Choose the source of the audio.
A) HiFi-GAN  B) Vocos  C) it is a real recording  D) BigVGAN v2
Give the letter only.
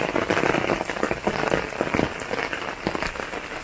C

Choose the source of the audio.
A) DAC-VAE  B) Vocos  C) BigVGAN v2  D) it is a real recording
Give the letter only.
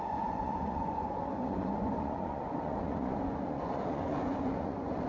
B